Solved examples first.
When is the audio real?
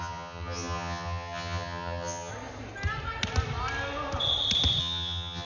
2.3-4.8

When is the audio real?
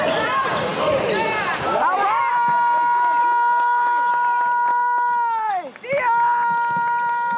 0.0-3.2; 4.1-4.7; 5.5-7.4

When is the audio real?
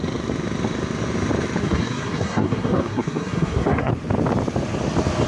0.0-1.6; 3.9-5.3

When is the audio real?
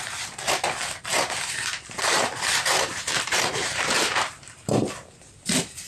0.0-2.5; 5.2-5.9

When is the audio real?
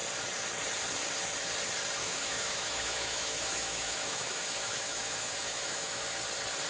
0.0-2.0; 6.0-6.7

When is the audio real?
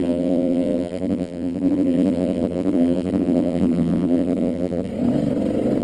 4.9-5.8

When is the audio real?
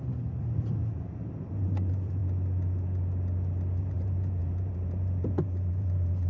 2.2-3.8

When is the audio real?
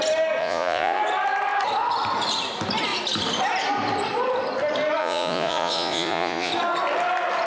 0.0-0.4; 1.0-5.0; 6.5-7.5